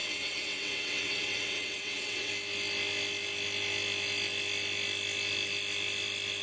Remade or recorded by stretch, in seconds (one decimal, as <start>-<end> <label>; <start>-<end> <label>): 0.0-2.3 remade; 2.3-6.4 recorded